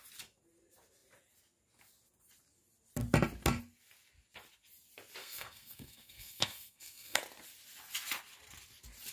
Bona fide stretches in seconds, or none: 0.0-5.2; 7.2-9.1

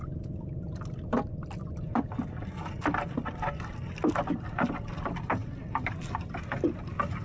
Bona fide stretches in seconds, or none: 0.0-7.2

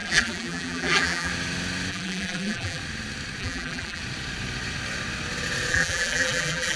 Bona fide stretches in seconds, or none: 1.3-1.9; 2.8-3.4; 4.0-5.7

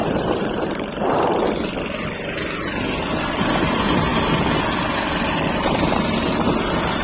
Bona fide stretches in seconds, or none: 1.4-7.0

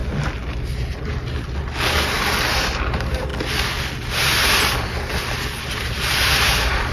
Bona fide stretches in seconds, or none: 0.0-2.5; 3.3-5.6